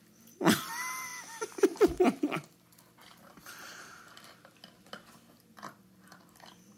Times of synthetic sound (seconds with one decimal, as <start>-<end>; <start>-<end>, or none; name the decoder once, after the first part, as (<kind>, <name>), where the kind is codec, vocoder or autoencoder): none